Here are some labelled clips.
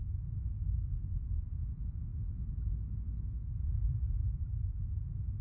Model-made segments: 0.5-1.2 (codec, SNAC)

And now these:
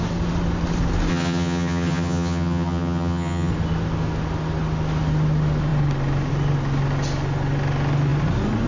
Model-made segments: 1.1-3.5 (vocoder, HiFi-GAN)

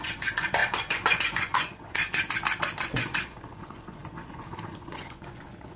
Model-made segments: 0.0-2.0 (vocoder, Vocos); 2.8-5.8

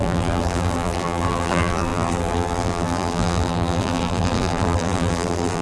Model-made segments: 0.0-5.6 (vocoder, BigVGAN v2)